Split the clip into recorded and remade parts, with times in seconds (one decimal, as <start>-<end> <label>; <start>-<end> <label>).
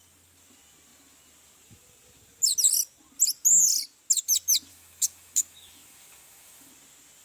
0.0-4.7 recorded; 4.7-6.7 remade; 6.7-7.2 recorded